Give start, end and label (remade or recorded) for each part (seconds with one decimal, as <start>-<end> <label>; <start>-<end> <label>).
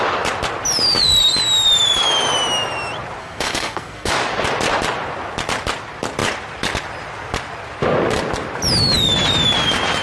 0.0-3.2 recorded; 3.2-4.1 remade; 4.1-10.0 recorded